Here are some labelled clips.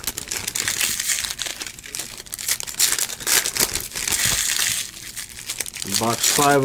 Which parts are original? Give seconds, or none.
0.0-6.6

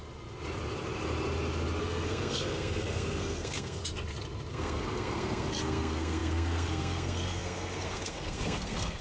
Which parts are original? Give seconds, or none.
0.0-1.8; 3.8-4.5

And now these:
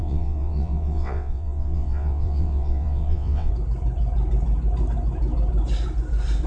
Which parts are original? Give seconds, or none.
3.5-6.5

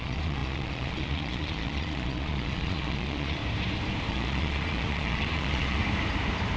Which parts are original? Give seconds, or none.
3.4-4.1; 5.8-6.6

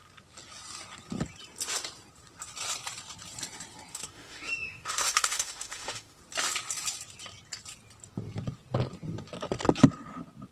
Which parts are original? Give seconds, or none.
0.0-3.9; 6.2-10.5

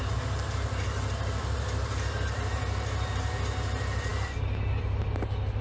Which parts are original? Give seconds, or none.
0.0-5.6

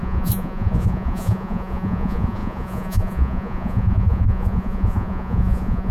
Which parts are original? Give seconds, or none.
none

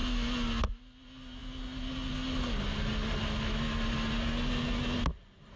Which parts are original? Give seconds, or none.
0.0-5.6